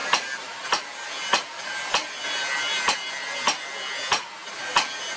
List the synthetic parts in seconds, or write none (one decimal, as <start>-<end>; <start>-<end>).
none